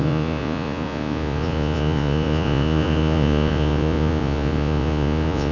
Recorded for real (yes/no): no